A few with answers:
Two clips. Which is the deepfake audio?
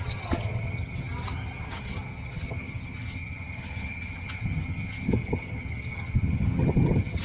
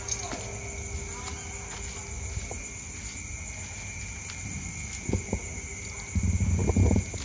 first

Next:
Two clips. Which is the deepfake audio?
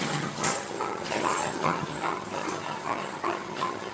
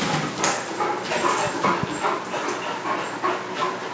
first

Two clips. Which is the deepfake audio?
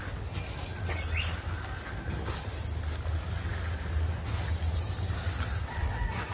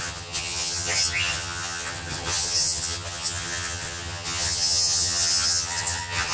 second